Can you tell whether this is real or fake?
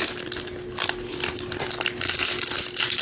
real